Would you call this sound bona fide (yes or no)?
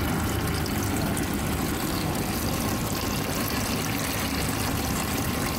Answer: yes